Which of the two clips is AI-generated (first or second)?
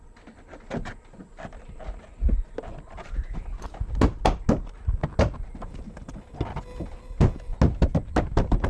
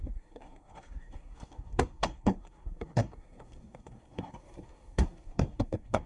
second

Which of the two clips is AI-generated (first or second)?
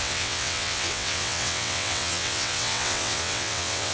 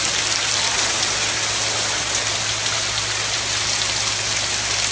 first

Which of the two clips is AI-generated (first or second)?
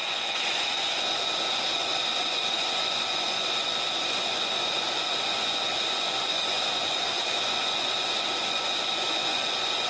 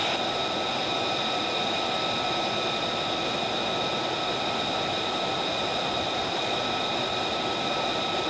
first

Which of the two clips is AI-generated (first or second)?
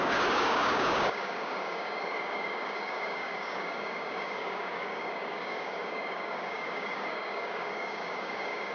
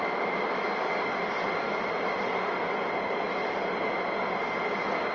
first